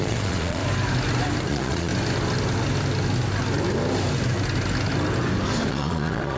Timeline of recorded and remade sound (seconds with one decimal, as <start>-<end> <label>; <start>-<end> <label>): 0.0-0.6 remade; 0.6-1.5 recorded; 1.5-1.9 remade; 1.9-5.7 recorded; 5.7-6.4 remade